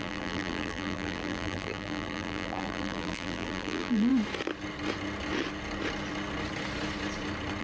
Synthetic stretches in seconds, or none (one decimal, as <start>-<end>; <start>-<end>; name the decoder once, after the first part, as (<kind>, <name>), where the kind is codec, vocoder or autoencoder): 0.0-4.1 (vocoder, BigVGAN v2)